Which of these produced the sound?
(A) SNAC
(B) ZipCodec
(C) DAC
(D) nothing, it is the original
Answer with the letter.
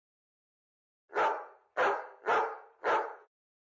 D